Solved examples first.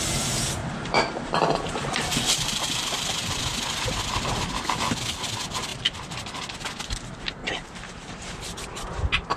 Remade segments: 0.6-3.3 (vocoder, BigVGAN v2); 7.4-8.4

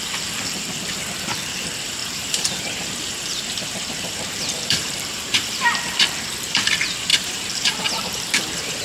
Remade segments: 2.0-5.8 (vocoder, BigVGAN v2); 7.1-8.8

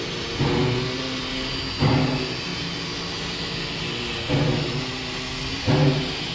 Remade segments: none

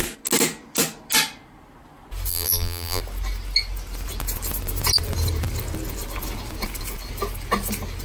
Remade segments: 2.3-3.0 (vocoder, BigVGAN v2)

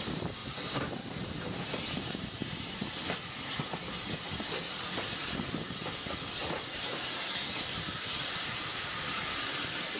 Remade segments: 0.4-5.4 (vocoder, BigVGAN v2); 6.4-9.2

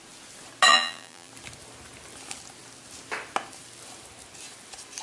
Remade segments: 0.7-1.3 (vocoder, BigVGAN v2)

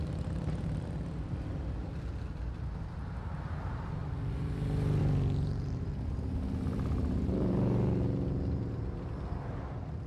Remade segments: none